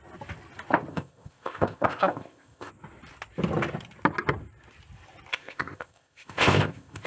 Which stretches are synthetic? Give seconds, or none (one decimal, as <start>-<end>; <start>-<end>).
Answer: 0.9-2.7; 5.3-7.1